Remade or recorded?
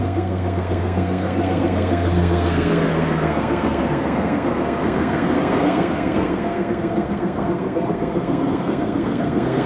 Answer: remade